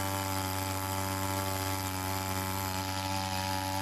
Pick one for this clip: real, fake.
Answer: real